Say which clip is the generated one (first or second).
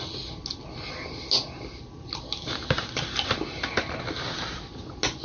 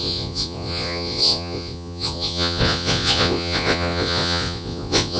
second